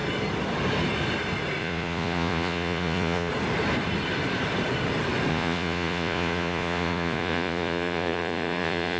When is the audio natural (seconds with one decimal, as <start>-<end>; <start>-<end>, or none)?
0.0-1.6; 3.3-5.3